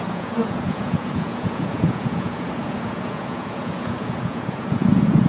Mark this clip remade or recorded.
remade